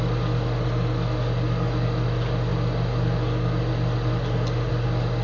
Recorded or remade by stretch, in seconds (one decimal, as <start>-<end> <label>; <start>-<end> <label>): 0.0-5.2 recorded